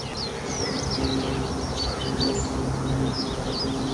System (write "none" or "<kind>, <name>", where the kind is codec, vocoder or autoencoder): none